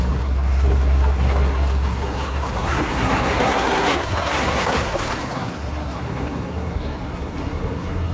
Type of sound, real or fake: fake